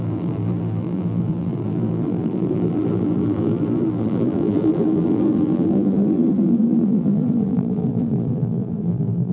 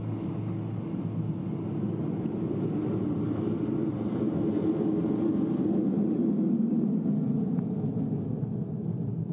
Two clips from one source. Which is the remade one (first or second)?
first